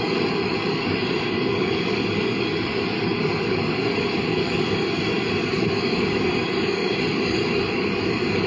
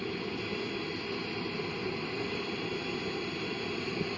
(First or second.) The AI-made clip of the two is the first